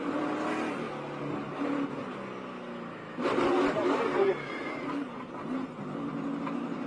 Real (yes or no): yes